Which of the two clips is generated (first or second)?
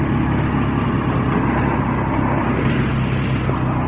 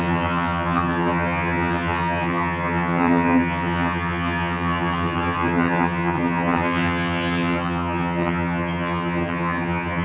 second